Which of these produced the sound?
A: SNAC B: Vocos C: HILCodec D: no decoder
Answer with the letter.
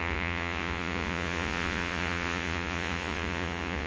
B